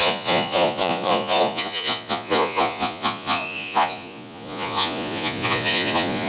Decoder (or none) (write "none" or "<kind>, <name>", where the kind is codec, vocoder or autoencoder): vocoder, Vocos